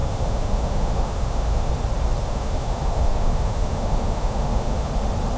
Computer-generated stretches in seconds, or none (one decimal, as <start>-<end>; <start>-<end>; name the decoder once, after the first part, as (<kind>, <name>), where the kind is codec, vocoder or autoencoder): 0.0-1.7 (autoencoder, DAC-VAE); 2.3-4.9